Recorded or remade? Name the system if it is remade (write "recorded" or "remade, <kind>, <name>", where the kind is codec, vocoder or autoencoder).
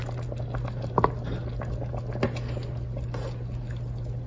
recorded